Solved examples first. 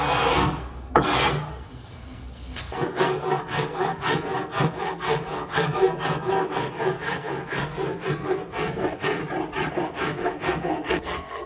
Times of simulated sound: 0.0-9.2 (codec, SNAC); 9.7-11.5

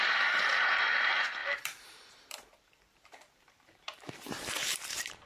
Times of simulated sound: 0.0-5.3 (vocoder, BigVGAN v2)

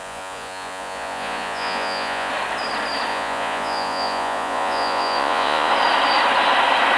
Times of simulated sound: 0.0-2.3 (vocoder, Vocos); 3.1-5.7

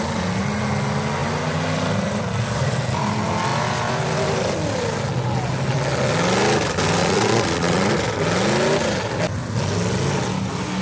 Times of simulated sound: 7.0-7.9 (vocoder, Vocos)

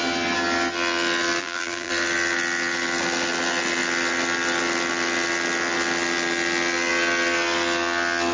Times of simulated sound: 1.4-1.9 (vocoder, BigVGAN v2)

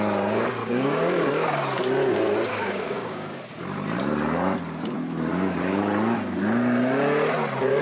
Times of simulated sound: 0.6-1.3 (codec, DAC); 2.5-3.4; 5.3-5.8

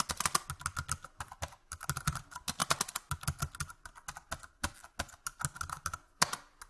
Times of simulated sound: none

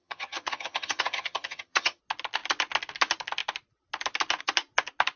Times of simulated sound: 0.0-2.0 (vocoder, HiFi-GAN)